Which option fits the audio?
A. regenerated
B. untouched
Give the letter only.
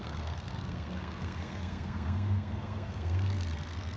A